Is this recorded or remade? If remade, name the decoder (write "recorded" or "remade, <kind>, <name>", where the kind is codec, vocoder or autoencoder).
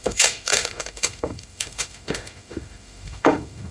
remade, autoencoder, DAC-VAE